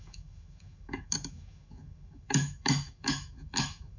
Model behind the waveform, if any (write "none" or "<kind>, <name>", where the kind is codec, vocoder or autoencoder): autoencoder, DAC-VAE